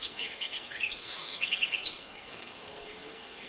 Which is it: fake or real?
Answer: fake